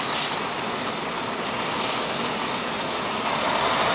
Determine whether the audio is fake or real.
real